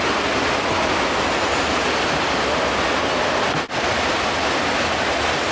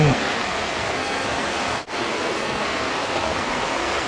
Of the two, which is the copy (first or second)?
second